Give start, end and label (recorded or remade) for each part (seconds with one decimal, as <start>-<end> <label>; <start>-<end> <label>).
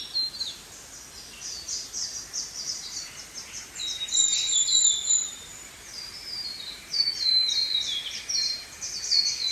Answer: 0.0-2.1 recorded; 2.1-3.7 remade; 3.7-4.3 recorded; 4.3-7.0 remade; 7.0-9.5 recorded